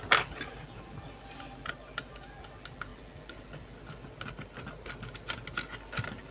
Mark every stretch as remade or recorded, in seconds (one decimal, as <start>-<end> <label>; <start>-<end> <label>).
0.0-6.3 recorded